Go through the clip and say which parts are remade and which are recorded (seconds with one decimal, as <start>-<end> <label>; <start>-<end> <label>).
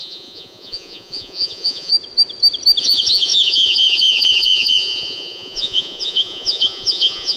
0.0-1.9 remade; 1.9-2.8 recorded; 2.8-7.4 remade